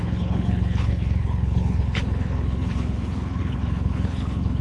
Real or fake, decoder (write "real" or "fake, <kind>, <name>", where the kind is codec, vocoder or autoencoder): fake, codec, HILCodec